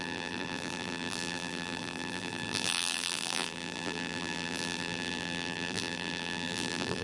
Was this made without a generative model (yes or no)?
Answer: no